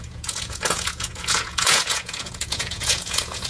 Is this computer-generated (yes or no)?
yes